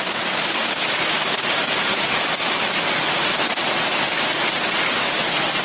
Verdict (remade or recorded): recorded